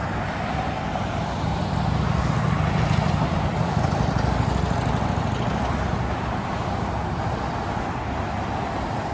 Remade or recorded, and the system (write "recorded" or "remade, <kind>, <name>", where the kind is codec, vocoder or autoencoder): recorded